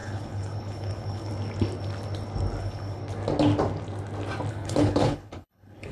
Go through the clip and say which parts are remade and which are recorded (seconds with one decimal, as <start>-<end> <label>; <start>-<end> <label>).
0.0-1.3 remade; 1.3-2.6 recorded; 2.6-3.0 remade; 3.0-4.5 recorded; 4.5-5.9 remade